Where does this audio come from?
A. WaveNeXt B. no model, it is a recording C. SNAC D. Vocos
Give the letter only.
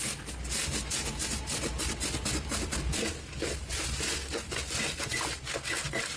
B